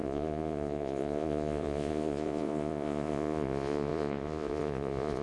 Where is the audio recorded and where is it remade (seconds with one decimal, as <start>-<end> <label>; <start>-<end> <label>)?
0.0-5.2 remade